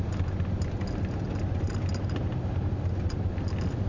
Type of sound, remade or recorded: recorded